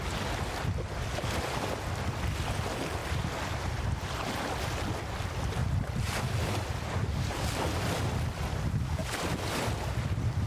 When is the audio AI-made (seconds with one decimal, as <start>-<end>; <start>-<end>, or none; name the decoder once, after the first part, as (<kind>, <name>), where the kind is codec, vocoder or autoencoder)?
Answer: 5.6-7.5 (vocoder, BigVGAN v2)